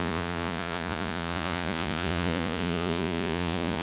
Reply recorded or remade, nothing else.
remade